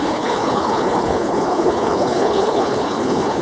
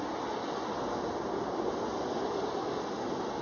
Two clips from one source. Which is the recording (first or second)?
second